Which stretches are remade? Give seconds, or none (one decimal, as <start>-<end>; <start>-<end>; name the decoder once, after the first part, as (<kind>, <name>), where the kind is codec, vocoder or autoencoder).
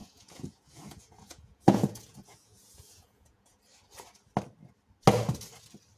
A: 0.0-3.6 (vocoder, Vocos)